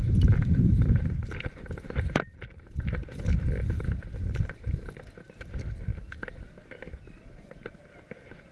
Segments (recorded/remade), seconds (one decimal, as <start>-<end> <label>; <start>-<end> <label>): 0.0-0.9 remade; 0.9-8.5 recorded